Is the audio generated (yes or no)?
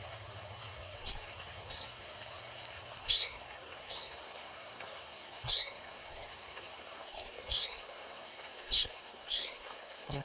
yes